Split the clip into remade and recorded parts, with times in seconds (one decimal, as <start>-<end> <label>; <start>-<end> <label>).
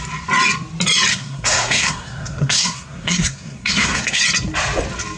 0.0-1.1 recorded; 1.1-4.2 remade; 4.2-5.2 recorded